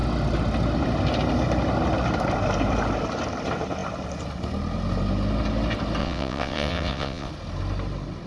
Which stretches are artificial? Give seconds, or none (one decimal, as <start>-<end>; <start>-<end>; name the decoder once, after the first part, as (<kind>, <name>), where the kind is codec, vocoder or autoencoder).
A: 6.0-7.3 (vocoder, WaveNeXt)